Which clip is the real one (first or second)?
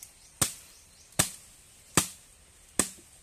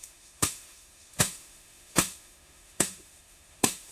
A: first